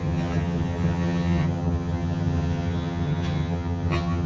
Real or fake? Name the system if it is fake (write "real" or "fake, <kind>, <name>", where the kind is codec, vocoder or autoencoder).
fake, vocoder, HiFi-GAN